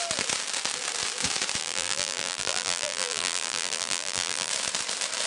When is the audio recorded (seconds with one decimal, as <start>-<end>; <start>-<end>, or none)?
0.0-1.6; 4.5-5.3